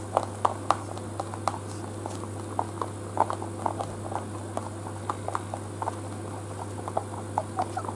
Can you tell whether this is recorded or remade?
recorded